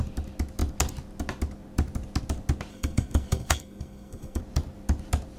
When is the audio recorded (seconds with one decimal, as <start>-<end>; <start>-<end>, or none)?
0.0-2.7; 4.4-5.4